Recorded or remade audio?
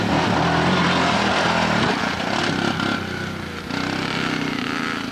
recorded